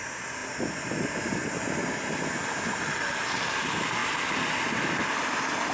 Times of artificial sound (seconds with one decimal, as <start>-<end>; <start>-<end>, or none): none